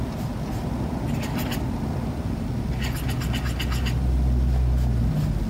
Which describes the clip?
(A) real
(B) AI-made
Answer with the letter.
A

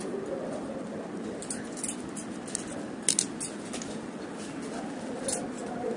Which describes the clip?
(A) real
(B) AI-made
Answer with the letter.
A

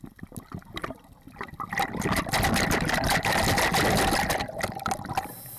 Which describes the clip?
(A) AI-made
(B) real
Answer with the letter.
B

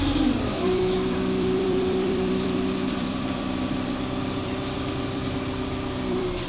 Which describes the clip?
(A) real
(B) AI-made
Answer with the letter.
B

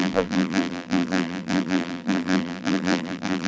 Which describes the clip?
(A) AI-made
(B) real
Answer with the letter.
A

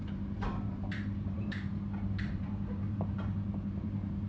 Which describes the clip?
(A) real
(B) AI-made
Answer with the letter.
B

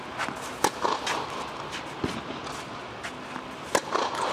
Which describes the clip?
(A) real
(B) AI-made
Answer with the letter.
A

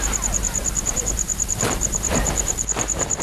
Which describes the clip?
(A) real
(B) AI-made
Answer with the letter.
B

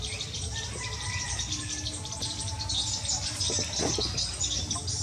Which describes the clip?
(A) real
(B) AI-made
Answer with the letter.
A